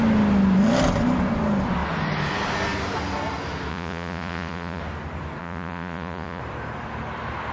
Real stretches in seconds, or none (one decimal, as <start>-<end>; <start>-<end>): 0.0-3.7; 4.8-5.4; 6.4-7.5